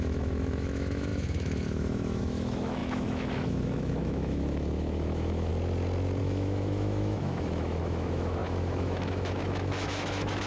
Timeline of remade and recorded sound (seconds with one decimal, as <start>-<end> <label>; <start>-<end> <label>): 0.0-5.5 remade; 5.5-6.2 recorded; 6.2-10.5 remade